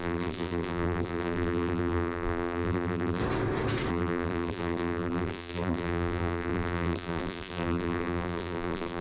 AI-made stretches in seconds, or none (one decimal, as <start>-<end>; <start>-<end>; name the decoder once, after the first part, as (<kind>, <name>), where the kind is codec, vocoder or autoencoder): 0.0-3.2 (vocoder, BigVGAN v2); 3.9-9.0